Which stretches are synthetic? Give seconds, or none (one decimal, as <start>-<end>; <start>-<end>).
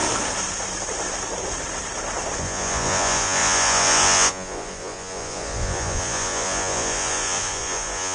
2.4-8.1